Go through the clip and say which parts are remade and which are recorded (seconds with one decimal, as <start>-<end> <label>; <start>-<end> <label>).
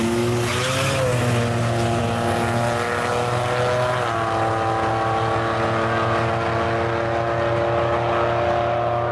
0.0-9.1 recorded